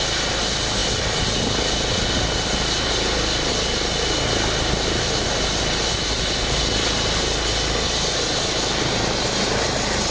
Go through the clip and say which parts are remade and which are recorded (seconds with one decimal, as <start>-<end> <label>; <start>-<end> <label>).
0.0-10.1 recorded